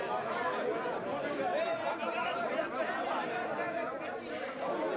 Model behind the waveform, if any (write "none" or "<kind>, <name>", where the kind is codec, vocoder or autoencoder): none